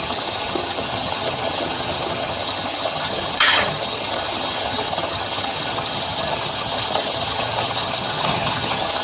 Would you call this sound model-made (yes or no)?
yes